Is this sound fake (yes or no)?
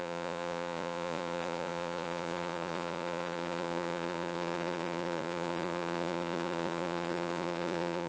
yes